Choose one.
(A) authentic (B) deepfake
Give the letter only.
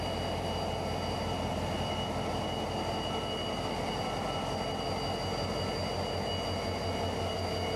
A